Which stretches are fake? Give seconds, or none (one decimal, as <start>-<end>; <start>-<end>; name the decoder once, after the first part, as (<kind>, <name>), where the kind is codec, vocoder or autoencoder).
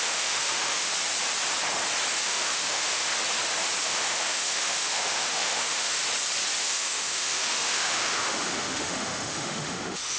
0.0-0.9 (autoencoder, DAC-VAE); 2.1-3.1; 3.8-6.0; 6.6-10.2